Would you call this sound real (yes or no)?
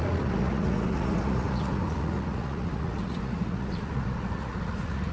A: no